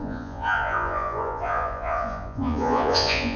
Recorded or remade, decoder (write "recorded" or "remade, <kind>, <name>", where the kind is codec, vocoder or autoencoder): remade, vocoder, Vocos